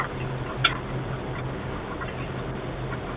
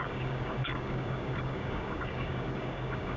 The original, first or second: first